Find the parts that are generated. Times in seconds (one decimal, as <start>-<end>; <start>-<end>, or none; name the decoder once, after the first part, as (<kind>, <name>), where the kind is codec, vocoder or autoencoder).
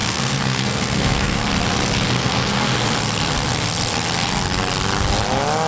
0.0-1.4 (codec, SNAC); 2.1-2.7